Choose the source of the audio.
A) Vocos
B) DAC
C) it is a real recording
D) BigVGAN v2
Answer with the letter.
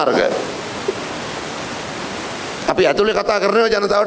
C